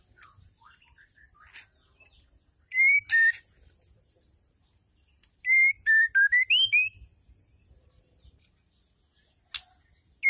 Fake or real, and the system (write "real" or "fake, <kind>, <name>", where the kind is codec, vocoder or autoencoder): real